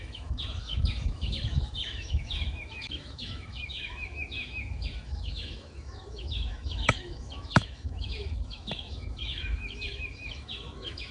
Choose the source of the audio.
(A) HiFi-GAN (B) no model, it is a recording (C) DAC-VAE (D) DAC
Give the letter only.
C